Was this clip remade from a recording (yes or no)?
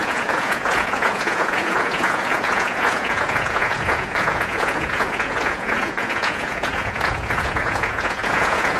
yes